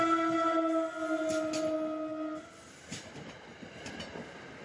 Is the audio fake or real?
real